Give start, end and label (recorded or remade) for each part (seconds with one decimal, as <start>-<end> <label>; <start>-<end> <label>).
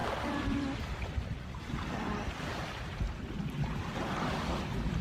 0.0-3.0 remade; 3.0-5.0 recorded